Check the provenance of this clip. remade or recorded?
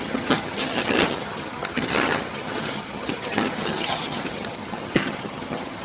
remade